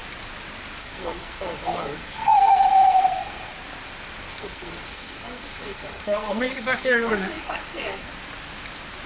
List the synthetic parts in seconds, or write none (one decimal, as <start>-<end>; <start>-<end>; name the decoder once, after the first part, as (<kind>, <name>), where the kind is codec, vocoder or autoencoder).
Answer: 0.8-3.5 (codec, SNAC); 4.2-8.1